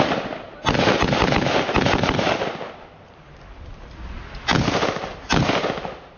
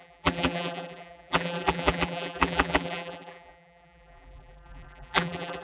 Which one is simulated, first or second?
second